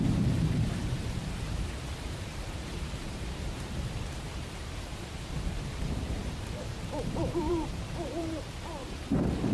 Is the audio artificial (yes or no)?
yes